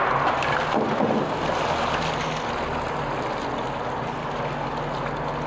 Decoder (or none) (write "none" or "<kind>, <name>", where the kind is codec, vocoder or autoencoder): none